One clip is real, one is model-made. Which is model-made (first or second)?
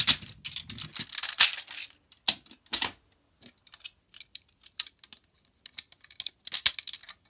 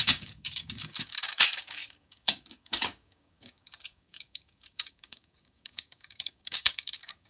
second